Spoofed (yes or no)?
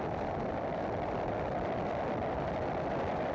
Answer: no